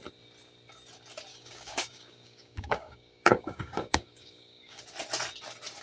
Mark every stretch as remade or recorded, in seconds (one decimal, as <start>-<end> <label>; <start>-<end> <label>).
0.0-1.3 recorded; 1.3-4.8 remade; 4.8-5.8 recorded